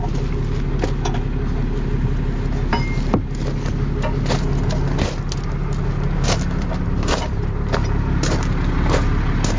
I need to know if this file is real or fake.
real